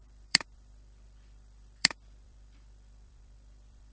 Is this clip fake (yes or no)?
yes